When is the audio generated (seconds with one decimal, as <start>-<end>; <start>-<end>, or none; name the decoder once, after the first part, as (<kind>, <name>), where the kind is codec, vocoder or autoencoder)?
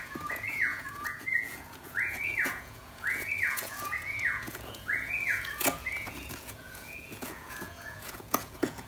0.0-8.9 (vocoder, Vocos)